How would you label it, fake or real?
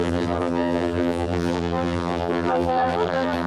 fake